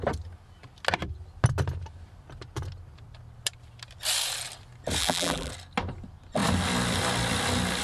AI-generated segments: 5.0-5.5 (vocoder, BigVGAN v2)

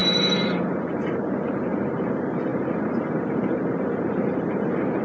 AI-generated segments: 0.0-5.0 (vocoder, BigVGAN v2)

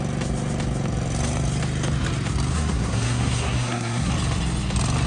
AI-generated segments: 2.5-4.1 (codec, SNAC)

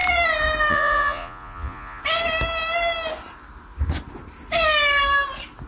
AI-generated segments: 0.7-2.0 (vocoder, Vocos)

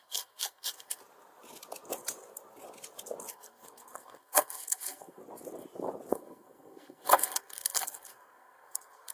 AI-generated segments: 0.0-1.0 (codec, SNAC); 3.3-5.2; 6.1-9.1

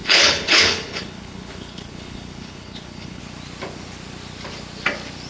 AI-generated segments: 0.0-3.2 (codec, HILCodec)

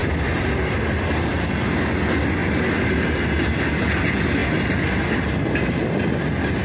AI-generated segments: 2.4-3.4 (vocoder, BigVGAN v2)

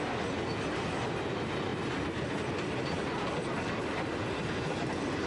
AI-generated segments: none